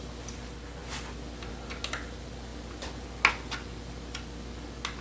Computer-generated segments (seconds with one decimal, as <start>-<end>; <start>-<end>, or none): none